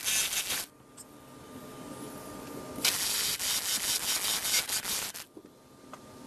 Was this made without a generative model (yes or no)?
yes